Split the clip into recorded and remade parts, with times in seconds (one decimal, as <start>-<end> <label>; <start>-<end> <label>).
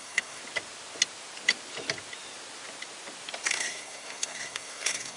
0.0-0.4 remade; 0.4-3.5 recorded; 3.5-5.2 remade